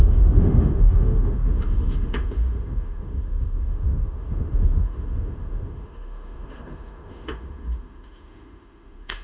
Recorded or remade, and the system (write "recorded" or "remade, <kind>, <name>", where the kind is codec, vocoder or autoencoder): remade, autoencoder, DAC-VAE